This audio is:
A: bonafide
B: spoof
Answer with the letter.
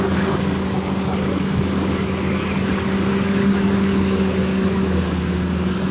B